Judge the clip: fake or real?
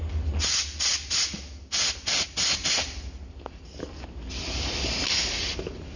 real